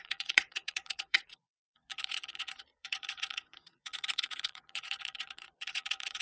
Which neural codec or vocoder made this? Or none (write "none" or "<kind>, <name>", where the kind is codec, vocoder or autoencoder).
vocoder, Vocos